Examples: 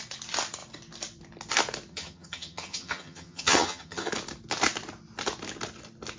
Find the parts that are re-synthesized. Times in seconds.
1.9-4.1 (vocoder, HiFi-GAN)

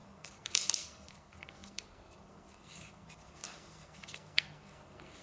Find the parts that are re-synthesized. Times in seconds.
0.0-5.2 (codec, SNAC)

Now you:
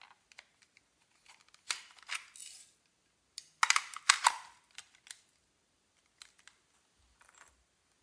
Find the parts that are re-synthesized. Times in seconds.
none

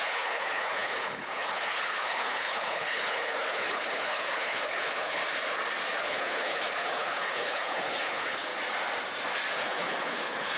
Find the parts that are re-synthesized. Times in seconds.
0.0-5.2 (codec, HILCodec); 6.0-8.5; 9.5-10.6

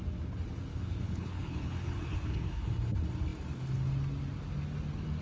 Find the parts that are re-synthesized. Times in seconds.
0.7-2.7 (codec, HILCodec)